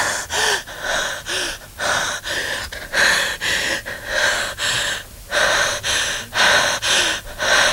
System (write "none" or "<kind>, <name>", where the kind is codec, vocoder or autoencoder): none